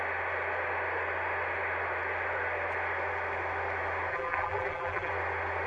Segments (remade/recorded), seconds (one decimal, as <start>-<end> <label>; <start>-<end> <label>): 0.0-4.1 recorded; 4.1-5.1 remade; 5.1-5.7 recorded